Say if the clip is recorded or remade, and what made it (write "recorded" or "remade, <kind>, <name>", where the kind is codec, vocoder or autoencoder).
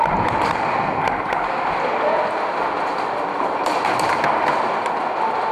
remade, vocoder, BigVGAN v2